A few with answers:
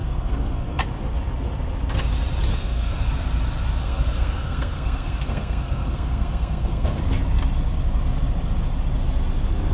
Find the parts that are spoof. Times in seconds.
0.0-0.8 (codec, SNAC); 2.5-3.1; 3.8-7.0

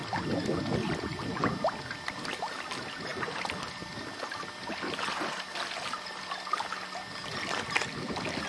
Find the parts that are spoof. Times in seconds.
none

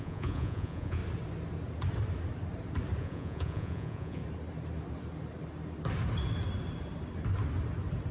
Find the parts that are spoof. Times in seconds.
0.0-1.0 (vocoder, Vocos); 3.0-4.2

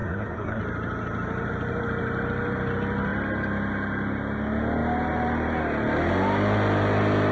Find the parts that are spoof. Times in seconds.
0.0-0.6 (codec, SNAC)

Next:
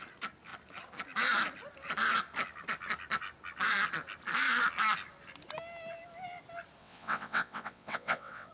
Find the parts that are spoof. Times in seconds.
6.8-8.5 (vocoder, WaveNeXt)

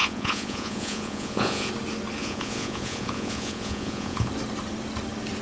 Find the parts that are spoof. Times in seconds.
0.0-1.7 (vocoder, Vocos); 2.2-4.3